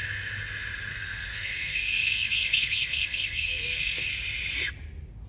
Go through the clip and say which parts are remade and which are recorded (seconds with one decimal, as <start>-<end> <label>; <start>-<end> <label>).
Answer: 0.0-0.9 recorded; 0.9-4.1 remade; 4.1-5.3 recorded